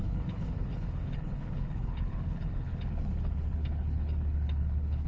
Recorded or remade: remade